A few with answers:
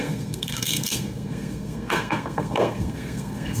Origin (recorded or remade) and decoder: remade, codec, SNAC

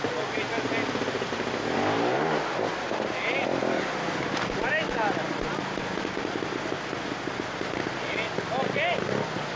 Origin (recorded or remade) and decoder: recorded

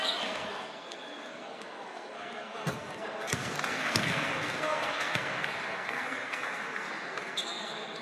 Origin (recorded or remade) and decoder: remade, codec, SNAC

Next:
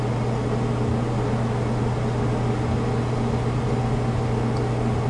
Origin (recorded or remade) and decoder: recorded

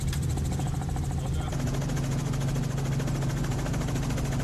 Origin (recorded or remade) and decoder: recorded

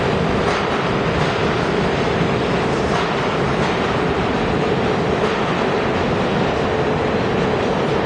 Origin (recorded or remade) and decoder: recorded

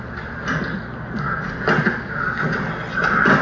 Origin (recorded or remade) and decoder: recorded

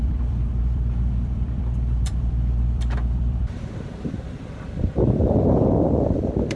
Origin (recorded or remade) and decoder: remade, vocoder, BigVGAN v2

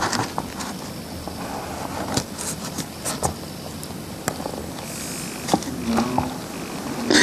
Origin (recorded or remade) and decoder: recorded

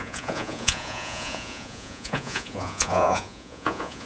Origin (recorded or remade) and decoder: remade, vocoder, Vocos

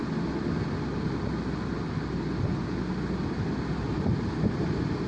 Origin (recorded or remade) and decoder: recorded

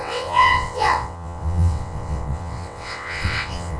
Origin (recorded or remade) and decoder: remade, vocoder, WaveNeXt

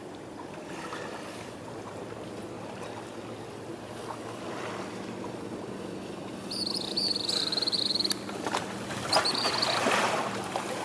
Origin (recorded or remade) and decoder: remade, vocoder, BigVGAN v2